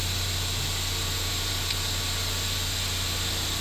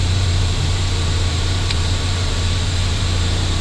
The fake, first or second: second